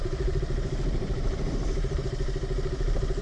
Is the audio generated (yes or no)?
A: yes